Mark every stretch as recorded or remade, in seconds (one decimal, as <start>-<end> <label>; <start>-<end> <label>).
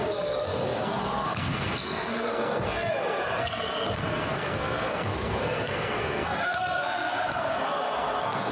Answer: 0.0-8.5 remade